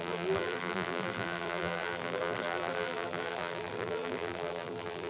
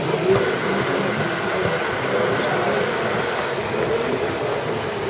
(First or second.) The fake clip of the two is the first